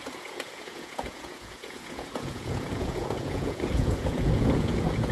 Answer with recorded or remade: remade